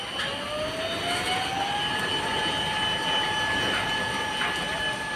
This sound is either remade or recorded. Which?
recorded